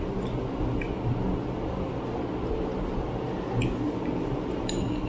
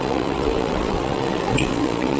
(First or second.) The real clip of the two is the first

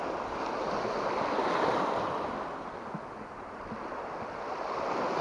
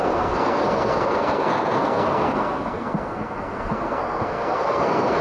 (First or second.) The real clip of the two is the first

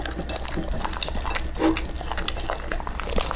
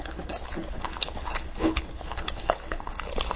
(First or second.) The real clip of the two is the first